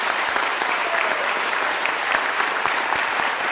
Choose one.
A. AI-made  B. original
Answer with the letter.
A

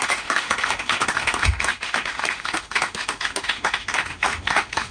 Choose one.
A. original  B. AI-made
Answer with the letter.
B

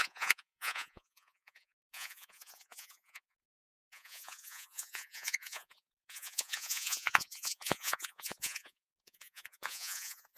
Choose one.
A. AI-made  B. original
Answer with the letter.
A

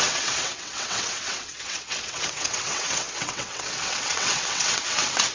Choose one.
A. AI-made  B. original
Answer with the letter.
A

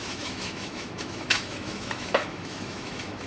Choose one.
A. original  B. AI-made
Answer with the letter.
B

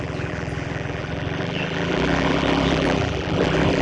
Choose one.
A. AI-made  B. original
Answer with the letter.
A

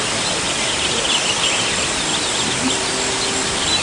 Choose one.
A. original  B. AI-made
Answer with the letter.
A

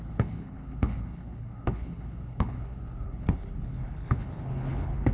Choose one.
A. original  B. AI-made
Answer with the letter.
B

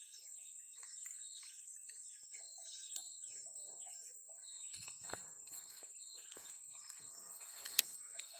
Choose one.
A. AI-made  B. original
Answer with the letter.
A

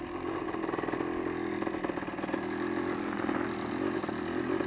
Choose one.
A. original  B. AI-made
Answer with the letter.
A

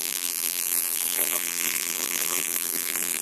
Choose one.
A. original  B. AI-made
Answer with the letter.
B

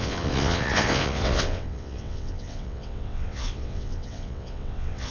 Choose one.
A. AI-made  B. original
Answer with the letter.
A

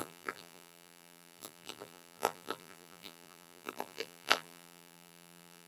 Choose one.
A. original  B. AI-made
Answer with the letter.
B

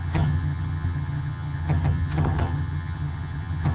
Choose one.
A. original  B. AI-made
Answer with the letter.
B